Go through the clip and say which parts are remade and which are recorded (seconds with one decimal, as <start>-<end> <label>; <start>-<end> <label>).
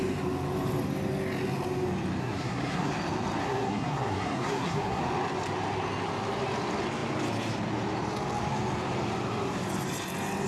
0.0-2.2 recorded; 2.2-2.9 remade; 2.9-3.4 recorded; 3.4-5.0 remade; 5.0-10.5 recorded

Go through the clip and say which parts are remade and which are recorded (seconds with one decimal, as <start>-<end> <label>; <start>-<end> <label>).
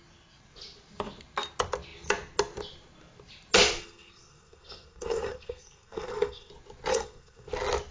0.0-3.8 recorded; 3.8-6.5 remade; 6.5-6.9 recorded; 6.9-7.5 remade; 7.5-7.9 recorded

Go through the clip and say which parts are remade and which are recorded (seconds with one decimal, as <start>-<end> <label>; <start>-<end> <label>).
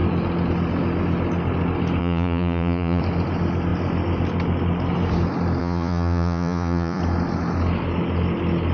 0.0-2.0 recorded; 2.0-3.0 remade; 3.0-5.6 recorded; 5.6-7.0 remade; 7.0-8.7 recorded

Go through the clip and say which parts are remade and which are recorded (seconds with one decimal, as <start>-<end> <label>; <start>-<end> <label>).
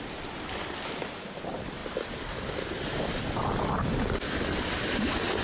0.0-5.4 recorded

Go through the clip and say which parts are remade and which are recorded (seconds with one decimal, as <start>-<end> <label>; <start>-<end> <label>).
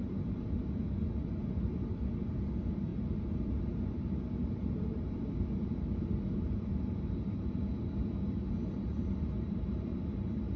0.0-10.6 remade